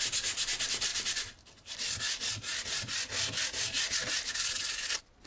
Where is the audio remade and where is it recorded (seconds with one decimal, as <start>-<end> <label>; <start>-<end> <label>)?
0.0-5.3 recorded